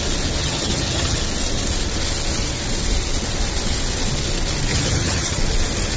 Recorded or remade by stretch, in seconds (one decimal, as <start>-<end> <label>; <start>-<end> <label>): 0.0-0.4 recorded; 0.4-1.2 remade; 1.2-4.7 recorded; 4.7-5.4 remade; 5.4-6.0 recorded